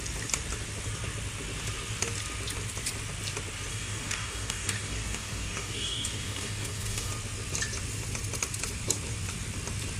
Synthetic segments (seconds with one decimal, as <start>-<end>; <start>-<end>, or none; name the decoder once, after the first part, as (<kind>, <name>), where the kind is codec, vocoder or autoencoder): 3.7-7.1 (codec, DAC)